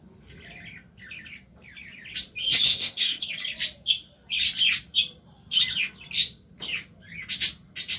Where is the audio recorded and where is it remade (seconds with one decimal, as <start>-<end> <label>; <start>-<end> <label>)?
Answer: 0.0-2.7 recorded; 2.7-3.3 remade; 3.3-8.0 recorded